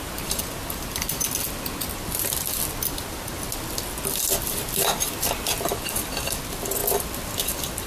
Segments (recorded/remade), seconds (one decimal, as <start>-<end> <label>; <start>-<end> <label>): 0.0-7.9 recorded